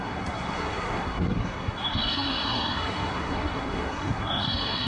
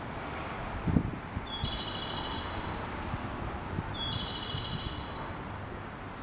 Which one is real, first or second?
second